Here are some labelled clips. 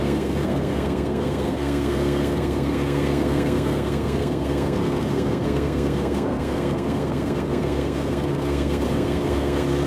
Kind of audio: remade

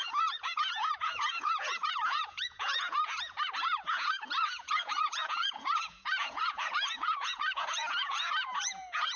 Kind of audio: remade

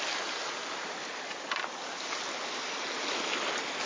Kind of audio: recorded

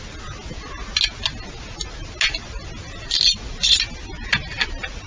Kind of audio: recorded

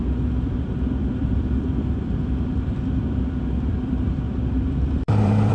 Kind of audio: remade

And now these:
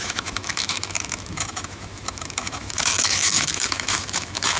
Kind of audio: remade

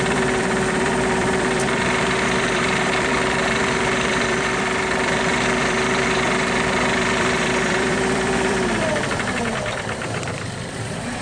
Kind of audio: remade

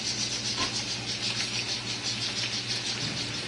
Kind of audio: recorded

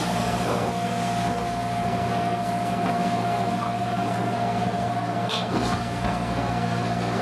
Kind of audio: remade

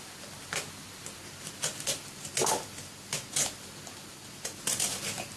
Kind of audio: recorded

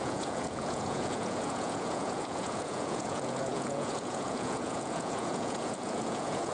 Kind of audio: remade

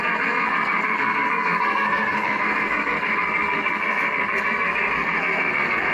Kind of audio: remade